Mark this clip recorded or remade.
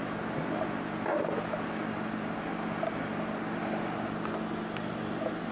recorded